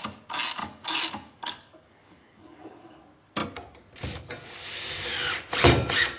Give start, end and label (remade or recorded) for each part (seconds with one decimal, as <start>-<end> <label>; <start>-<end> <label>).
0.0-0.6 recorded; 0.6-3.0 remade; 3.0-6.2 recorded